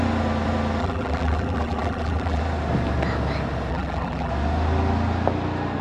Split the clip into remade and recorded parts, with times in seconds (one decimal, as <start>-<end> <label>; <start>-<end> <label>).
0.0-0.8 recorded; 0.8-2.4 remade; 2.4-3.7 recorded; 3.7-4.3 remade; 4.3-5.8 recorded